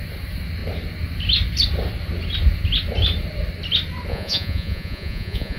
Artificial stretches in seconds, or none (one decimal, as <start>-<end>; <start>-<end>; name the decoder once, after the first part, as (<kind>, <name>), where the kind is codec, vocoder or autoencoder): 4.1-5.6 (vocoder, Vocos)